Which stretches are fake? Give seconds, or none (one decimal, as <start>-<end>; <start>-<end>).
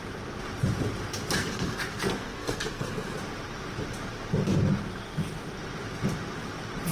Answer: 1.4-3.2